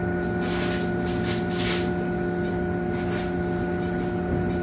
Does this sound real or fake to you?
real